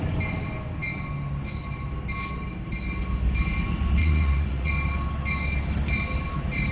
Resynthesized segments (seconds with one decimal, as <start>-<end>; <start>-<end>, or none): 4.0-4.7